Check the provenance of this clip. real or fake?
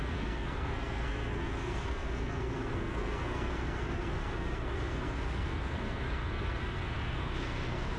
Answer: fake